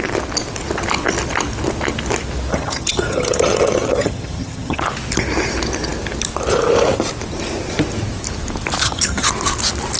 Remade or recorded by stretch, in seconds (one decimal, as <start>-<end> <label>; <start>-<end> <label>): 0.0-2.5 recorded; 2.5-4.8 remade; 4.8-8.8 recorded; 8.8-9.3 remade; 9.3-10.0 recorded